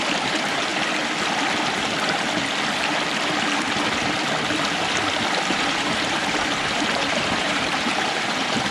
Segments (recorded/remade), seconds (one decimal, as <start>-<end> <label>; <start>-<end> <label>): 0.0-0.7 remade; 0.7-5.5 recorded; 5.5-8.7 remade